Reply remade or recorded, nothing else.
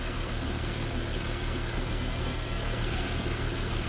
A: remade